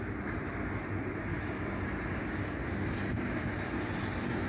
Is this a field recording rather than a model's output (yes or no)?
yes